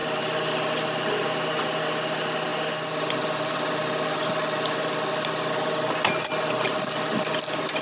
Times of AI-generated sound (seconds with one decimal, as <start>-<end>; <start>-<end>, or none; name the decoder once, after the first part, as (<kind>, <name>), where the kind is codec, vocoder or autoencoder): none